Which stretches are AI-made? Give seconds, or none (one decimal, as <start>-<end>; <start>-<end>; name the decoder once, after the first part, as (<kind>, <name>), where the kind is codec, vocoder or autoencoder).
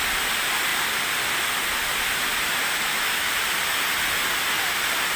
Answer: 2.6-3.3 (autoencoder, DAC-VAE)